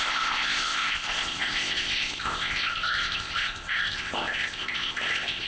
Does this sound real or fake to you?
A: fake